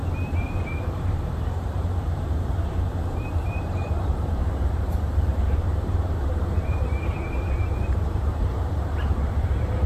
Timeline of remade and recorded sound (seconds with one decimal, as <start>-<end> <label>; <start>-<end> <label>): 0.0-9.9 remade